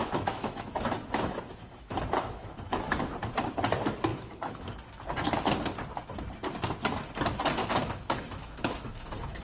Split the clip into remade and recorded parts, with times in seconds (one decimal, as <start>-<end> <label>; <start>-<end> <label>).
0.0-3.0 remade; 3.0-4.1 recorded; 4.1-5.0 remade; 5.0-7.6 recorded; 7.6-9.4 remade